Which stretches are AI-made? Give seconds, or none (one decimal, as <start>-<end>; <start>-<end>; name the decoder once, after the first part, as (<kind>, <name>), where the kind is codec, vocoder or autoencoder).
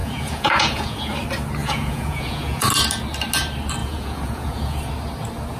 0.0-1.1 (vocoder, Vocos); 1.6-2.7; 3.8-4.9